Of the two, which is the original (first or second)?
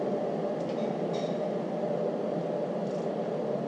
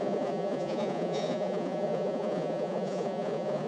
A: first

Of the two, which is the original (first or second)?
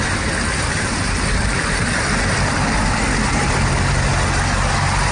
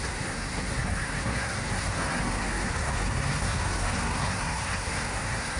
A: first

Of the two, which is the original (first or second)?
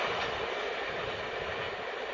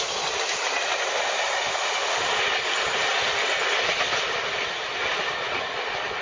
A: second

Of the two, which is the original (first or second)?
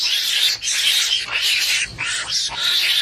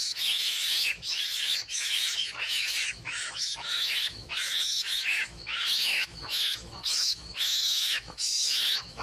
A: first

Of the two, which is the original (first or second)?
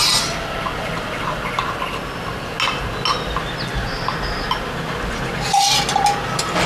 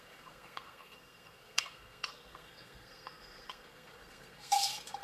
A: first